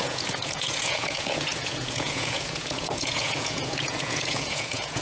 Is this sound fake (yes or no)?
yes